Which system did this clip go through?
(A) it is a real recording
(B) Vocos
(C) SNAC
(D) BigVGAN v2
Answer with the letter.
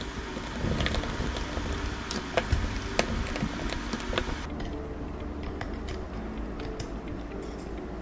A